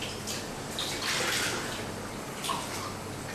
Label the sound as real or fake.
real